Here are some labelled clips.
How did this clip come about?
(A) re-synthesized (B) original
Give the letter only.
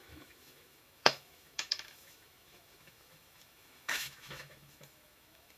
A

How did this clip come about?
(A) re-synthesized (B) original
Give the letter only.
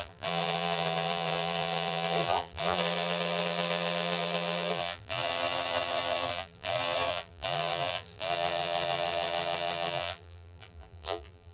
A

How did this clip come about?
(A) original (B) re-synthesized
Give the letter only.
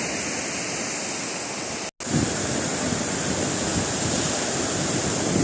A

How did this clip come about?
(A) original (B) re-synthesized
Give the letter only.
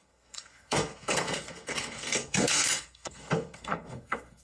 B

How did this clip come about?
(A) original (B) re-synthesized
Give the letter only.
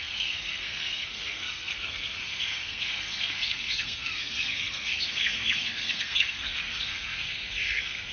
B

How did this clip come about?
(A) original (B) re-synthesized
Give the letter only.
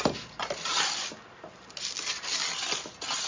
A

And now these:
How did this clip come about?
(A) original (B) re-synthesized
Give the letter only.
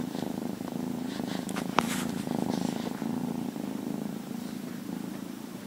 B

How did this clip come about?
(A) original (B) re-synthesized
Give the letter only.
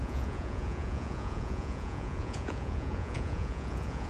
B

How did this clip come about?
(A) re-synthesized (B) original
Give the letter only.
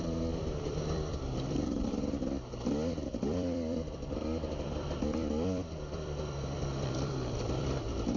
A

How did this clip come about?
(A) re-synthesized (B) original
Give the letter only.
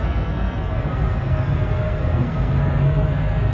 A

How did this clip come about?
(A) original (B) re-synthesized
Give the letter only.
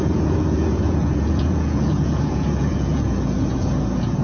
B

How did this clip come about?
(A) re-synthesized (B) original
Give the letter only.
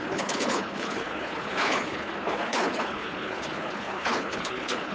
A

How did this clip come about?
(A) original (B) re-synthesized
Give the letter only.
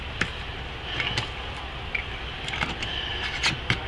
A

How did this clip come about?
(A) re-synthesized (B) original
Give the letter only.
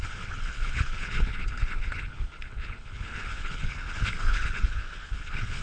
A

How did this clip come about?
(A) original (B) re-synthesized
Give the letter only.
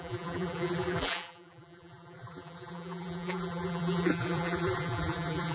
B